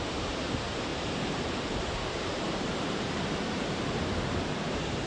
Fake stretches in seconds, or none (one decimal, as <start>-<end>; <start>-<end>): 0.9-4.0